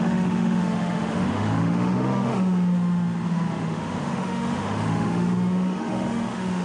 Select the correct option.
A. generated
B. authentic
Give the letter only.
A